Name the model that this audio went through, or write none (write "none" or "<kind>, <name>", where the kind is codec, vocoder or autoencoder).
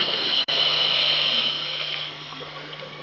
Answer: codec, SNAC